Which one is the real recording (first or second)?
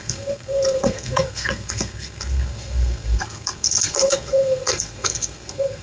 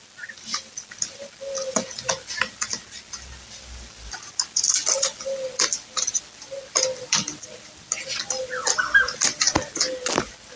second